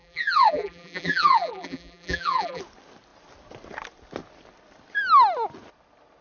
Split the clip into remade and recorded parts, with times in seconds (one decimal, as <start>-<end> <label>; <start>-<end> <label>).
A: 0.0-2.6 remade; 2.6-6.2 recorded

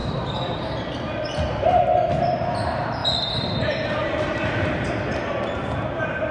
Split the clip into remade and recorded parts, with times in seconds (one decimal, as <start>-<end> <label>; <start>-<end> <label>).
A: 0.0-1.8 remade; 1.8-3.0 recorded; 3.0-4.9 remade; 4.9-6.3 recorded